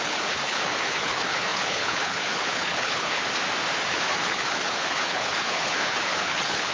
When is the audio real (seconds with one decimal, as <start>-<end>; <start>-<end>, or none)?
3.2-3.9